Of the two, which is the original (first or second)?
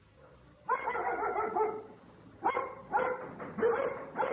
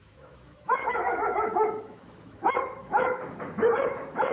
first